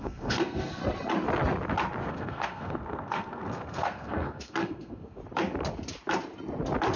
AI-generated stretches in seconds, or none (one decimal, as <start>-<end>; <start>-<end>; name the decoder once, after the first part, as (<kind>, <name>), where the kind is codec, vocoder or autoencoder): 0.0-0.8 (codec, SNAC); 2.1-5.2